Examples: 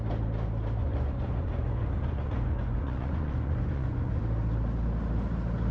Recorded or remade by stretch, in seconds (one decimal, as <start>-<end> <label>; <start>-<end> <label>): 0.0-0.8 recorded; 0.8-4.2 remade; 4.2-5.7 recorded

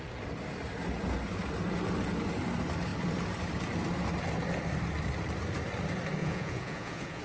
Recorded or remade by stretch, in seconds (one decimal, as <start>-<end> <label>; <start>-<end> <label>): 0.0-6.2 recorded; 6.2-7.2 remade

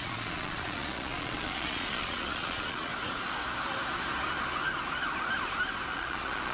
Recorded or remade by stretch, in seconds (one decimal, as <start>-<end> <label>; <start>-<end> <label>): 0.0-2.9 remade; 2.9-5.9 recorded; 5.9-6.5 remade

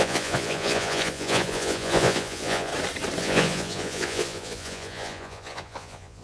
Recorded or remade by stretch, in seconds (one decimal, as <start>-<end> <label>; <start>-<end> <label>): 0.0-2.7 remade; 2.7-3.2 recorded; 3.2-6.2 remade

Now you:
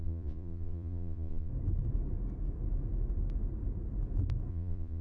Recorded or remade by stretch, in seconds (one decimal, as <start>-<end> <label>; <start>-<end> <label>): 0.0-1.5 remade; 1.5-4.5 recorded; 4.5-5.0 remade

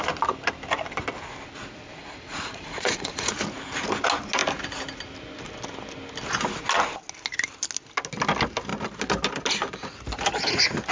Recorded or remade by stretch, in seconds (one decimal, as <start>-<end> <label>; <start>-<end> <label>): 0.0-2.0 recorded; 2.0-3.3 remade; 3.3-10.9 recorded

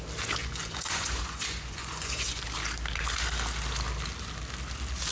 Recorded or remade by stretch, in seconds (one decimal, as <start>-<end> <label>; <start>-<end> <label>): 0.0-0.4 recorded; 0.4-2.4 remade; 2.4-5.1 recorded